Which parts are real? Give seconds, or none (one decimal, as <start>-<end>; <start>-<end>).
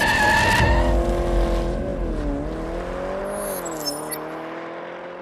0.0-5.2